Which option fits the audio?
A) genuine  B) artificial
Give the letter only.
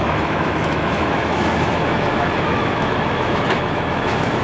B